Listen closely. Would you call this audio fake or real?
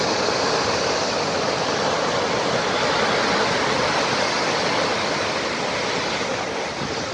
real